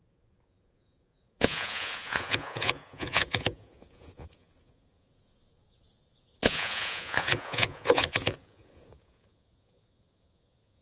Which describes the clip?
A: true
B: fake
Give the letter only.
B